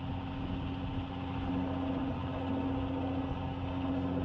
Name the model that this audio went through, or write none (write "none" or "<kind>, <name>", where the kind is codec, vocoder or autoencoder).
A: none